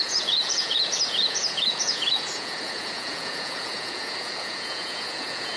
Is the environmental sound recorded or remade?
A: remade